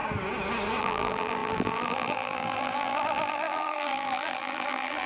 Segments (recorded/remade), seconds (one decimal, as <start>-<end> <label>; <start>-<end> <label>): 0.0-0.8 recorded; 0.8-5.1 remade